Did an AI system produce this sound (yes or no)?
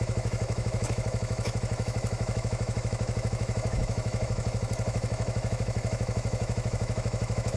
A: yes